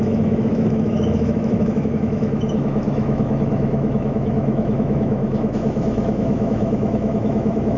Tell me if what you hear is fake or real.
fake